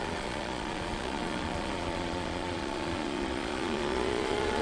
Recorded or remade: remade